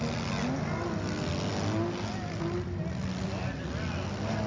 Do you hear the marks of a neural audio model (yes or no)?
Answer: no